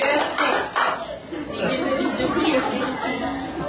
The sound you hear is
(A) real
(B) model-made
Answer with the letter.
A